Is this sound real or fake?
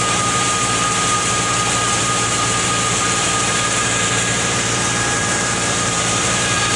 fake